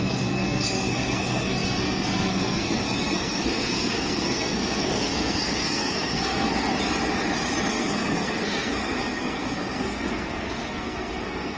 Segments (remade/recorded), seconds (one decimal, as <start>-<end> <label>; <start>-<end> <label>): 0.0-6.7 remade; 6.7-7.7 recorded; 7.7-11.6 remade